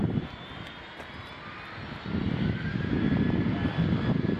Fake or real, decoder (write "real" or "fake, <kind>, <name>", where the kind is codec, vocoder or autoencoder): real